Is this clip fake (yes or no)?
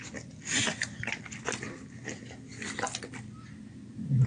no